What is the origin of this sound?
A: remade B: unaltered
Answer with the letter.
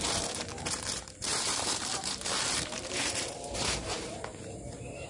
A